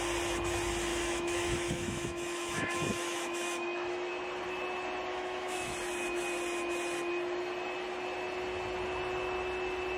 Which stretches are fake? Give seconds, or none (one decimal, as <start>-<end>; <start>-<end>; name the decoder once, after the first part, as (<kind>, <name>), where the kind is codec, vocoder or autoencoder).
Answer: 0.9-4.1 (autoencoder, DAC-VAE); 5.1-5.7